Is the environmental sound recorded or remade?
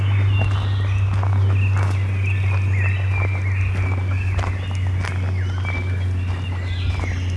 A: recorded